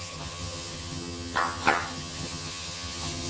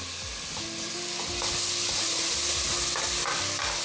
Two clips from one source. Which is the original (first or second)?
second